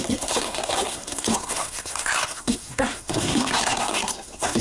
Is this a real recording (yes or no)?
no